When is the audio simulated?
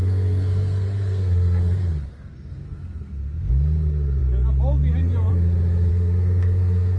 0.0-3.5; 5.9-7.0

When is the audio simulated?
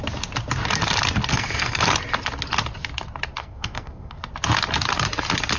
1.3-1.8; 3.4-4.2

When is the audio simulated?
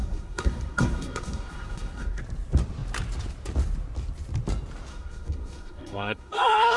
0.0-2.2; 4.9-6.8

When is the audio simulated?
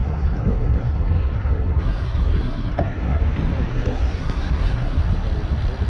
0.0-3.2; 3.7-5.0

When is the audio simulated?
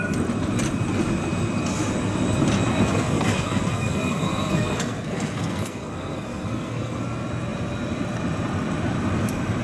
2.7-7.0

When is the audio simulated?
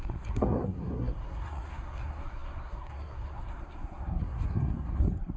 0.0-5.4